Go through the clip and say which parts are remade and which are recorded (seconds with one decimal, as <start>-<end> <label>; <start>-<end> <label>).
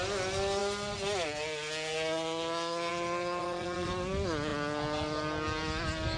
0.0-3.4 recorded; 3.4-3.9 remade; 3.9-6.2 recorded